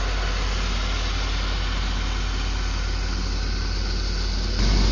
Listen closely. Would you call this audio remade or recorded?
recorded